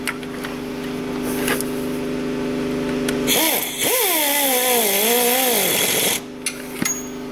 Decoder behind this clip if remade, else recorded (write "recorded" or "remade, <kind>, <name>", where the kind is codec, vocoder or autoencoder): recorded